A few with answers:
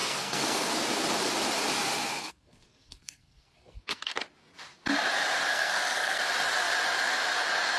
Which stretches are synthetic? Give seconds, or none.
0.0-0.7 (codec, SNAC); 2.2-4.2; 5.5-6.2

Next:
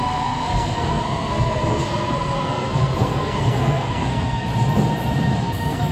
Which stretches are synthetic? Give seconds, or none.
0.0-4.5 (codec, SNAC); 5.4-5.9

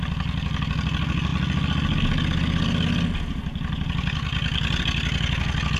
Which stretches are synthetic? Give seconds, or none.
none

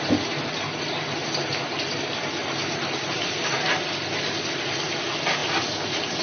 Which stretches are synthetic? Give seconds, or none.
none

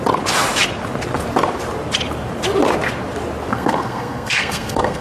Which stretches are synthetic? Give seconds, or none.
3.5-5.0 (codec, SNAC)

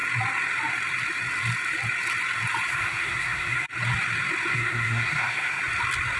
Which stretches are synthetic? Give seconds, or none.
2.7-3.7 (codec, SNAC); 4.5-5.6

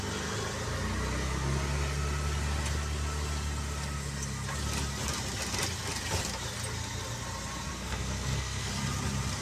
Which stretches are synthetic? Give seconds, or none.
7.7-8.7 (codec, SNAC)